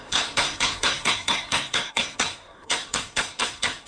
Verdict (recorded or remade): remade